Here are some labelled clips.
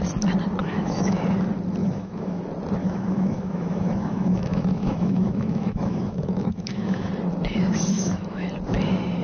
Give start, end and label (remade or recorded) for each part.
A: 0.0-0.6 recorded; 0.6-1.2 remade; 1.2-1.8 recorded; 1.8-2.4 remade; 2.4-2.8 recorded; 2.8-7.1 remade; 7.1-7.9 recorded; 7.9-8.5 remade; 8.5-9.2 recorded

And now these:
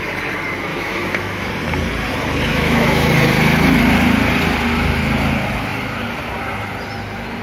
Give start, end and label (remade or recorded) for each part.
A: 0.0-0.7 recorded; 0.7-1.5 remade; 1.5-2.5 recorded; 2.5-3.1 remade; 3.1-7.4 recorded

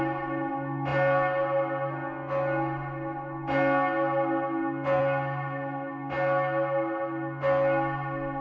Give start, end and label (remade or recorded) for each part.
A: 0.0-8.4 recorded

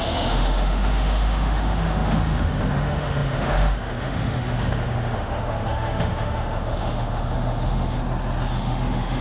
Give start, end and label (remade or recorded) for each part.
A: 0.0-8.0 remade; 8.0-8.5 recorded; 8.5-9.2 remade

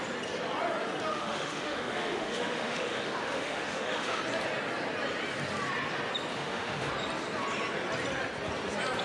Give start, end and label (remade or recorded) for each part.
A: 0.0-1.1 recorded; 1.1-4.2 remade; 4.2-6.3 recorded; 6.3-6.9 remade; 6.9-9.0 recorded